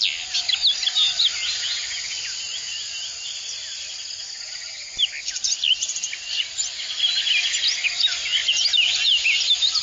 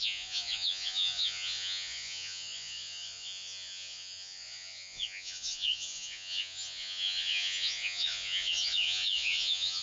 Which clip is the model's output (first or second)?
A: second